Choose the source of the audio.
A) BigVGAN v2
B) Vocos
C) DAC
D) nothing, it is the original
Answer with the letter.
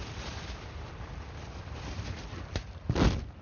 A